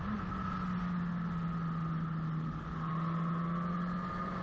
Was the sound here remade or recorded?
recorded